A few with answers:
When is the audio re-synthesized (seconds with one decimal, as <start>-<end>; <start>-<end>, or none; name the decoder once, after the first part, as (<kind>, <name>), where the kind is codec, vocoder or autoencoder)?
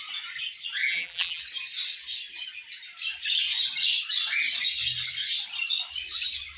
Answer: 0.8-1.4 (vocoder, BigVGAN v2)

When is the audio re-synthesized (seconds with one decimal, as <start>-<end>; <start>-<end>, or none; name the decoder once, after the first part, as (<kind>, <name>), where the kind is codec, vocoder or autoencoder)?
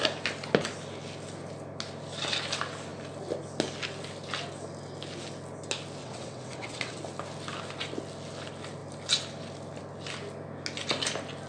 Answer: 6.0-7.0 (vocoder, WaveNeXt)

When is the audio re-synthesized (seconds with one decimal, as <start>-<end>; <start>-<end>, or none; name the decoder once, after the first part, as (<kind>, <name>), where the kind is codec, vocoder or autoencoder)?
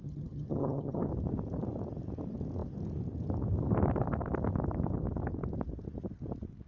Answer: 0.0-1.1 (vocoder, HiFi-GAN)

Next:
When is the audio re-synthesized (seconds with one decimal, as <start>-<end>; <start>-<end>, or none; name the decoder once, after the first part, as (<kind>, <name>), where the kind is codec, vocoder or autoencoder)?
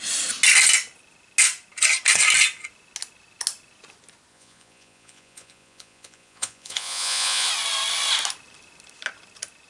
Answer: 4.3-7.5 (vocoder, Vocos)